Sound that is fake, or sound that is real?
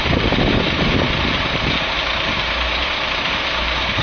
fake